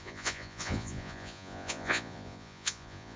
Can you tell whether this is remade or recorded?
remade